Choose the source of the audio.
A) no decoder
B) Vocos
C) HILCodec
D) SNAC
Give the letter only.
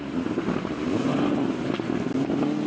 A